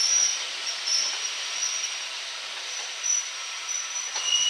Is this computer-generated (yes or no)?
no